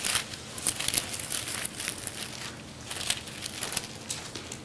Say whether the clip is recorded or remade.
recorded